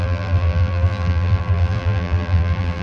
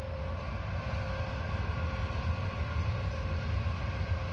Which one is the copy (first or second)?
first